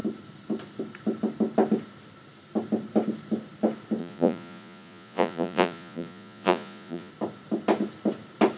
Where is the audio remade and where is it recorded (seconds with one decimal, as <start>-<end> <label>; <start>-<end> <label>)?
0.0-4.0 recorded; 4.0-7.1 remade; 7.1-8.6 recorded